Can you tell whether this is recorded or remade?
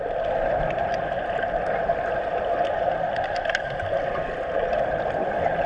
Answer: recorded